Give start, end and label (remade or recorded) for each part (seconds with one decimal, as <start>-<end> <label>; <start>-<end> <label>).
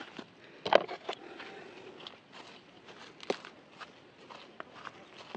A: 0.0-5.4 recorded